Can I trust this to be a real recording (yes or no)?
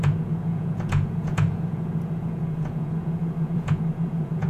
no